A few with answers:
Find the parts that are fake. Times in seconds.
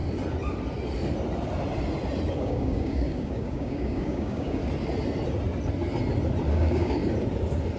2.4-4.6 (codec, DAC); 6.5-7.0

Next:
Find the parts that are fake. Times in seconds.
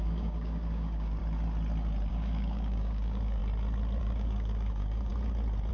0.0-1.2 (codec, DAC); 2.1-3.4; 4.0-5.1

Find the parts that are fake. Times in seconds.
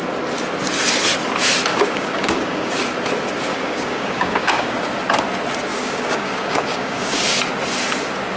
1.7-2.7 (codec, DAC); 3.5-4.8; 5.7-7.4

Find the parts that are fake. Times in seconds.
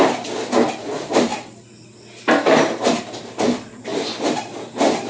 none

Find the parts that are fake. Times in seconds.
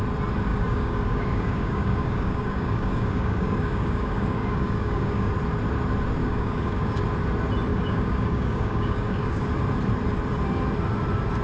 0.5-5.3 (codec, DAC); 6.2-7.0; 7.7-9.5